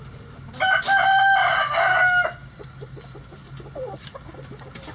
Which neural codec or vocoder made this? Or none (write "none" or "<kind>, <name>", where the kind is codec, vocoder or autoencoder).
none